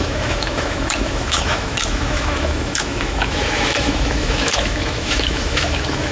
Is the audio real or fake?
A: fake